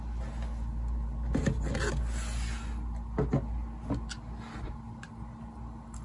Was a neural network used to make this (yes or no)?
no